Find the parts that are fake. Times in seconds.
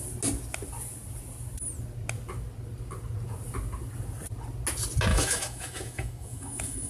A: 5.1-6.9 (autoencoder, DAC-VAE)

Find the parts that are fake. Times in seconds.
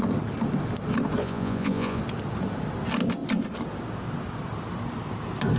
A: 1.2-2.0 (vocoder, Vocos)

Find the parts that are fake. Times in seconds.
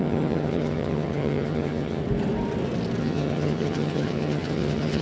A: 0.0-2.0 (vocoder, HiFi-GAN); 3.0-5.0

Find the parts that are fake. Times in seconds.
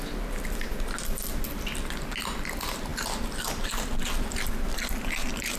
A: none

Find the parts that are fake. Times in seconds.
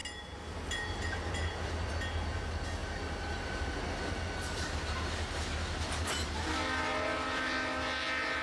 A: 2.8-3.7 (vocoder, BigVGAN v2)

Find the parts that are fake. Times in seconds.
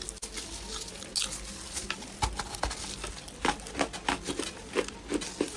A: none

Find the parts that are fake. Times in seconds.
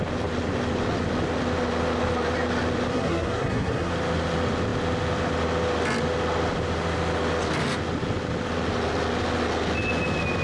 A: 2.9-3.9 (codec, SNAC)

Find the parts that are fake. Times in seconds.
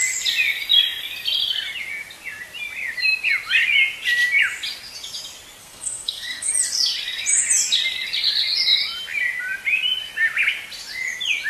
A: 5.6-6.5 (codec, SNAC)